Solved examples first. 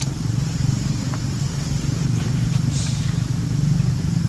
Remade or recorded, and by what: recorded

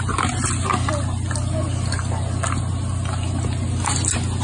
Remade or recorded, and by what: recorded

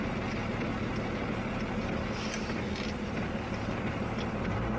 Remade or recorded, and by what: recorded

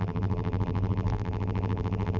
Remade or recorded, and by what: remade, vocoder, BigVGAN v2